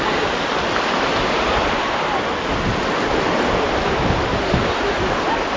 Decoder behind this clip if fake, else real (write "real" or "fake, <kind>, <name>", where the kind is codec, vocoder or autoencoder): real